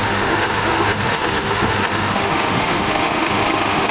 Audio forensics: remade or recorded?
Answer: remade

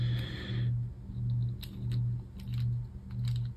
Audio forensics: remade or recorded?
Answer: recorded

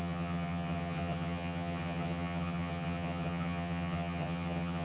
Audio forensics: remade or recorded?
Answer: remade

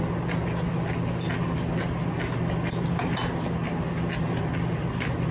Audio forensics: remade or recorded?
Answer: recorded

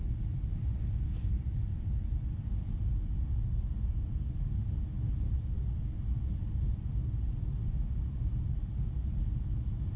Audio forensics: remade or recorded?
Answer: recorded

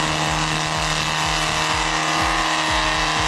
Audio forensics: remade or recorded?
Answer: recorded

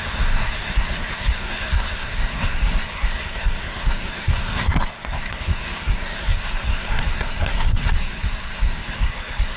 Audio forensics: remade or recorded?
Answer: remade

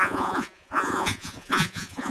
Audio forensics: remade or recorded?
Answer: remade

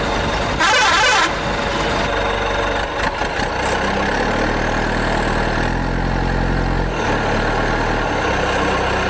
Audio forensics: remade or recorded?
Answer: recorded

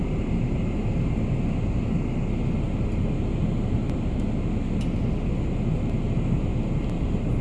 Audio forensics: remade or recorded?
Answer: recorded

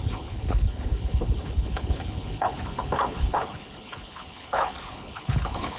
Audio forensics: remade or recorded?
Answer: remade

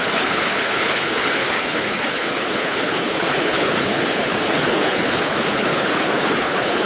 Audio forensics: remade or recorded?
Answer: remade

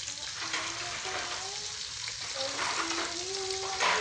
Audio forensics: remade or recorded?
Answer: recorded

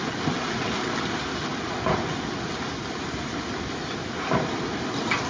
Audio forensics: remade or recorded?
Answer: recorded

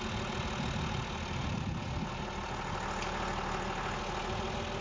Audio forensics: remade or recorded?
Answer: recorded